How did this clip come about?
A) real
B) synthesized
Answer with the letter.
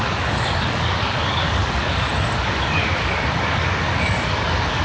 B